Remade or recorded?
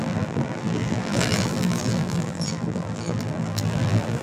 remade